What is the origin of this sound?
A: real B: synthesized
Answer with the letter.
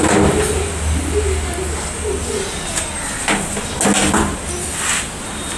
A